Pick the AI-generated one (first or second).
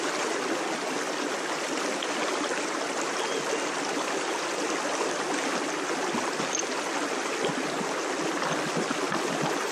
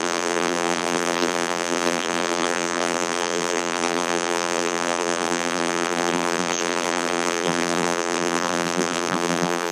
second